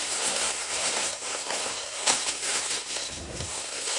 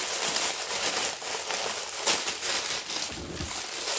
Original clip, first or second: second